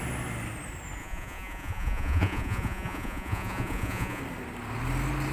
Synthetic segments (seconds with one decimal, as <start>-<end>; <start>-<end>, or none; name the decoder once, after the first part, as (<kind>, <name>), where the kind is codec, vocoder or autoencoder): 1.0-4.2 (vocoder, Vocos)